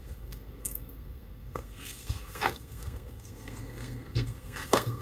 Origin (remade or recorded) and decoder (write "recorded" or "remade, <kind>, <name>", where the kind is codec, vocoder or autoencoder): remade, codec, SNAC